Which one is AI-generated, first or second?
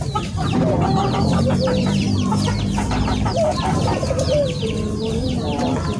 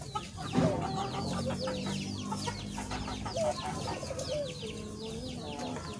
first